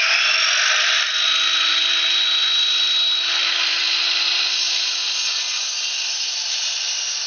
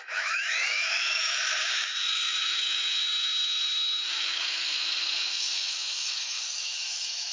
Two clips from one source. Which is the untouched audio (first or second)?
first